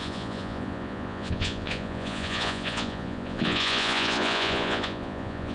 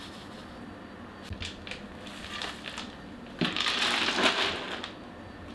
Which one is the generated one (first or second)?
first